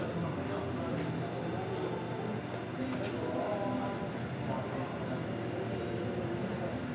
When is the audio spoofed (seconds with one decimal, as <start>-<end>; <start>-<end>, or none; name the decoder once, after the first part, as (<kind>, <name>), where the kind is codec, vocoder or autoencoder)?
none

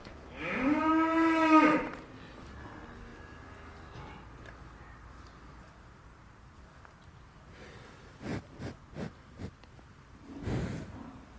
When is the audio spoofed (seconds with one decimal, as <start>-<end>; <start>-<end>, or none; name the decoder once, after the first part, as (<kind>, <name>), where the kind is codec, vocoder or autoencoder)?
0.0-0.9 (autoencoder, DAC-VAE)

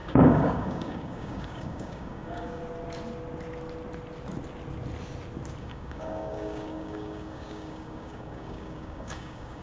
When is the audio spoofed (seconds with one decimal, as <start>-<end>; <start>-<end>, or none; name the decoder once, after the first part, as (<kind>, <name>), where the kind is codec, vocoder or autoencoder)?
0.0-2.6 (codec, DAC); 5.6-9.6

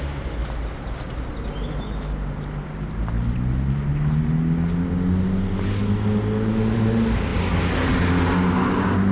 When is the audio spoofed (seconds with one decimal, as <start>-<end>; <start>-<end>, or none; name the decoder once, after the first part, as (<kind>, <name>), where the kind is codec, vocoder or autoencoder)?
none